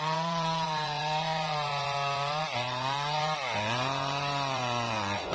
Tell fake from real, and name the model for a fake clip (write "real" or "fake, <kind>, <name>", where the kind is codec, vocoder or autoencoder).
fake, vocoder, Vocos